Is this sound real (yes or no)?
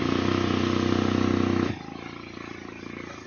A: yes